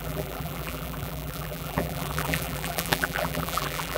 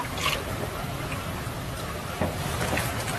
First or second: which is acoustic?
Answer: second